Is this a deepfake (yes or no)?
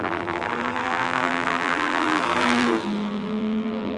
yes